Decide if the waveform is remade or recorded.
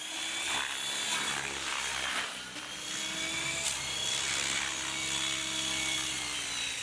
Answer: remade